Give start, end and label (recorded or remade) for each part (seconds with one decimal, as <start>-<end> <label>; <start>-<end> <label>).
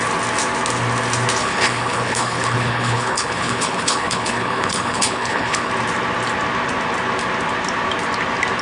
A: 0.0-1.4 recorded; 1.4-5.7 remade; 5.7-8.6 recorded